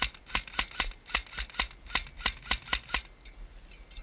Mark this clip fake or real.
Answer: real